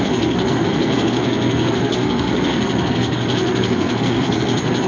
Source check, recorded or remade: remade